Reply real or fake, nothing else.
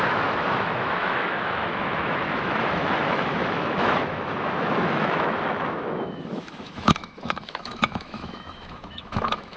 fake